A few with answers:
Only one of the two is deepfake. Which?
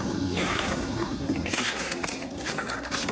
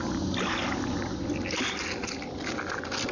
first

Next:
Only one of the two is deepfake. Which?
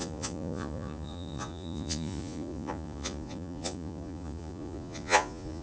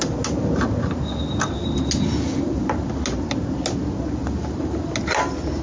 first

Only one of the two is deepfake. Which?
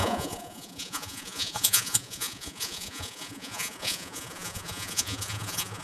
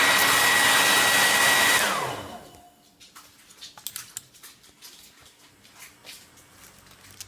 first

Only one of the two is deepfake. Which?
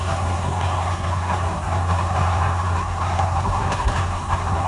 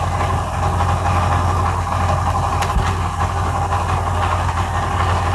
first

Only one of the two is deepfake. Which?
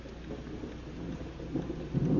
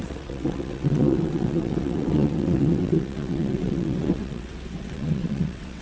second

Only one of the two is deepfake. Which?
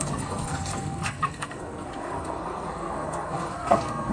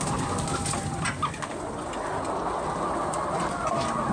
first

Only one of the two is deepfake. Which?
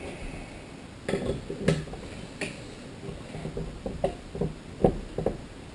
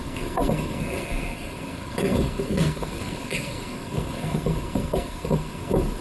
second